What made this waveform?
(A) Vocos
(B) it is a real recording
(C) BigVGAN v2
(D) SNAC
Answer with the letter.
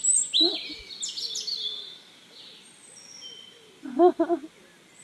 B